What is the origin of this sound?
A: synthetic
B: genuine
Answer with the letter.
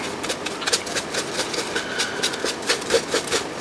B